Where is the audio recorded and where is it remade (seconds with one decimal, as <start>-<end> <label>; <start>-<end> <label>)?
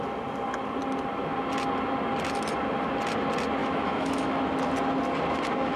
0.0-3.6 recorded; 3.6-4.4 remade; 4.4-5.8 recorded